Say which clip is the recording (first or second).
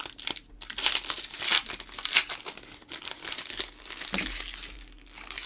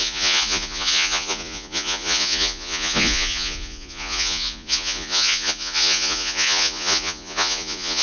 first